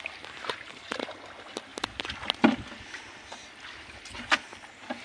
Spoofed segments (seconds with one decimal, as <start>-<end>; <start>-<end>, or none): none